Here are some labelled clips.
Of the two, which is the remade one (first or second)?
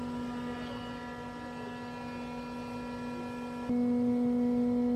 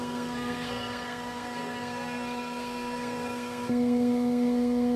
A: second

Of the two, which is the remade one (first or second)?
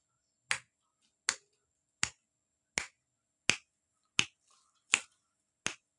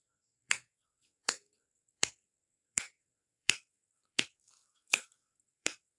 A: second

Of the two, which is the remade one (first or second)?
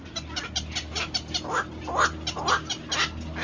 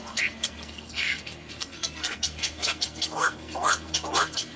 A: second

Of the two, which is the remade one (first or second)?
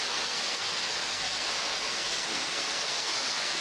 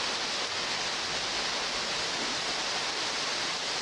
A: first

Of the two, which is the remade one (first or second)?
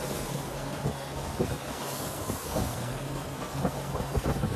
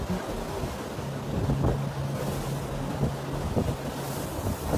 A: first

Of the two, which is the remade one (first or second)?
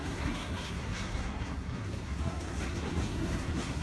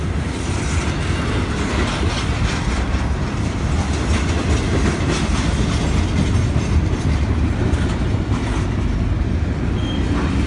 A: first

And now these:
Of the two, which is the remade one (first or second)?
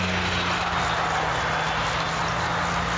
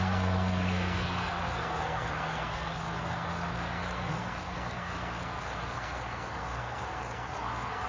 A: second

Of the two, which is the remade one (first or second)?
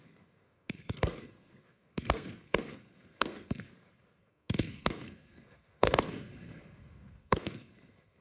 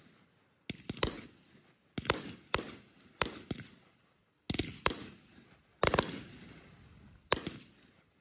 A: first